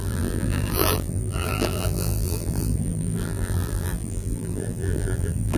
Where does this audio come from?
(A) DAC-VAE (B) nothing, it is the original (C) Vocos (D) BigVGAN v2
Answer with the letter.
D